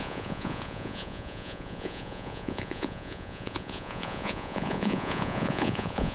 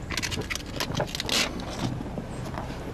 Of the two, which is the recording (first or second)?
second